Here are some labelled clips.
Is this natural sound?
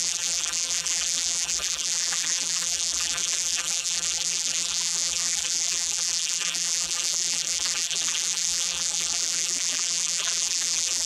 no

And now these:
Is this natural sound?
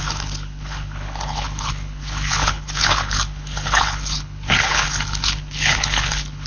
no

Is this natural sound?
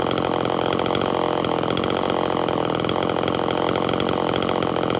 yes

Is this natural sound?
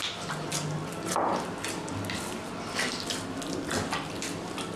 yes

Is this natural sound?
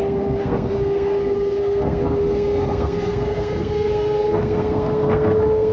no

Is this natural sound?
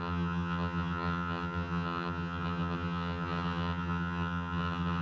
no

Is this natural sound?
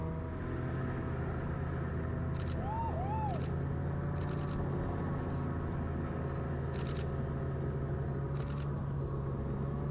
yes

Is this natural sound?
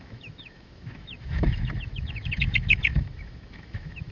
no